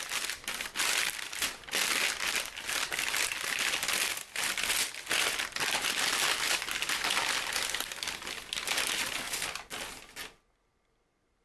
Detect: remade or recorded recorded